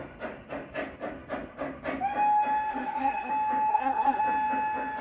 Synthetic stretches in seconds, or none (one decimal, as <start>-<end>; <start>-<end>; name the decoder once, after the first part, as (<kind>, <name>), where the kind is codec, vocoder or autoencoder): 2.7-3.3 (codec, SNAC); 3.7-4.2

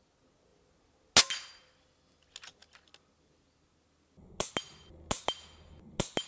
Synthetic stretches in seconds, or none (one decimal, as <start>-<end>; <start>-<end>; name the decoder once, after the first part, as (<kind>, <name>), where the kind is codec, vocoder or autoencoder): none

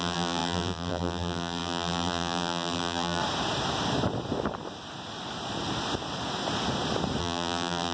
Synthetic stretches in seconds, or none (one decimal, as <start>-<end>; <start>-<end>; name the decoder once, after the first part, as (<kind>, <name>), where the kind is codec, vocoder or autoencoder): 0.0-3.2 (vocoder, BigVGAN v2); 7.2-7.9

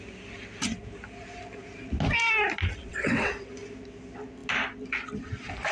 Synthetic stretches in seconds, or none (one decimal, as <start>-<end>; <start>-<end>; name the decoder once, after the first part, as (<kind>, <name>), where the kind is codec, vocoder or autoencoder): 2.8-3.3 (vocoder, WaveNeXt)

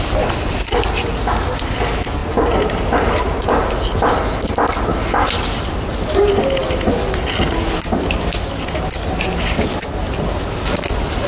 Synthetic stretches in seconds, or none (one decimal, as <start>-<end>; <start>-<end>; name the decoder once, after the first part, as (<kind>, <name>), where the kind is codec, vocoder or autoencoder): 2.2-3.7 (vocoder, BigVGAN v2)

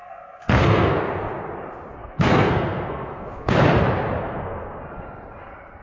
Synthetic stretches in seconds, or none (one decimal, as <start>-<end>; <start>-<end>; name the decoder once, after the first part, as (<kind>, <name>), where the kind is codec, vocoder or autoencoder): 0.0-0.9 (codec, SNAC); 2.0-3.5; 4.2-4.8

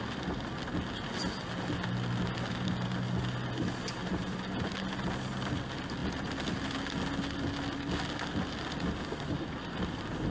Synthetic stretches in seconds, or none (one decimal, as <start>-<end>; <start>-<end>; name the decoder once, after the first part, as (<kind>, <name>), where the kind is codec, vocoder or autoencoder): 4.0-4.7 (vocoder, BigVGAN v2)